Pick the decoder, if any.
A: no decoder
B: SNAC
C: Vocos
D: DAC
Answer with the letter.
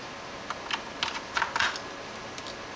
A